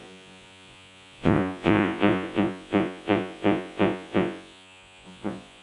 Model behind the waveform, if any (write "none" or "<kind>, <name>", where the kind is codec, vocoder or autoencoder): vocoder, Vocos